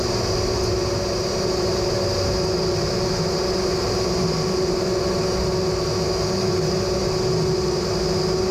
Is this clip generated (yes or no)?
no